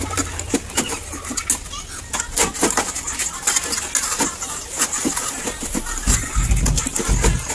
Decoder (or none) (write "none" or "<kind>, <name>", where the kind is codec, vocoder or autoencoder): none